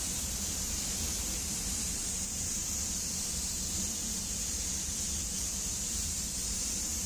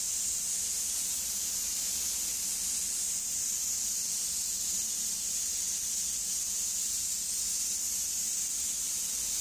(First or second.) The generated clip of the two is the first